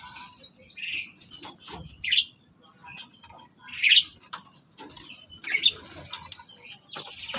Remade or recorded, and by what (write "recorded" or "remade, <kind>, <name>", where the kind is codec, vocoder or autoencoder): recorded